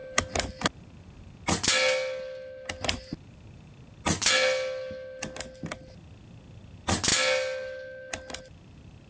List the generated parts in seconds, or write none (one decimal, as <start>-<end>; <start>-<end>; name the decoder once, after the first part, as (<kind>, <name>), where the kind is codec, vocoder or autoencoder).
none